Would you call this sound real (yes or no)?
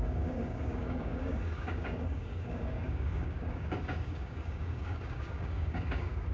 no